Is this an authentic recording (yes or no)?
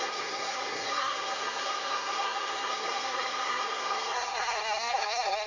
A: no